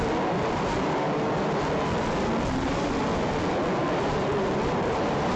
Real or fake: real